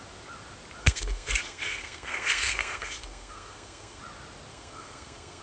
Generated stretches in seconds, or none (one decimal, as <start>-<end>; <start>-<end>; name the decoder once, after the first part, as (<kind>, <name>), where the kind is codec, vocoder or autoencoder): 0.8-4.0 (codec, SNAC); 4.5-5.4